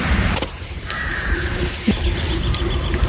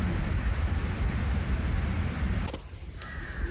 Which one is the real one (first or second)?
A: second